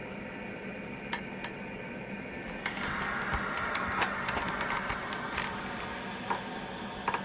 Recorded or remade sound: recorded